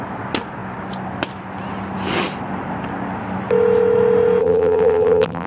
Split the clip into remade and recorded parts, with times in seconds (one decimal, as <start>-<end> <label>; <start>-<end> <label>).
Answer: 0.0-4.4 recorded; 4.4-5.5 remade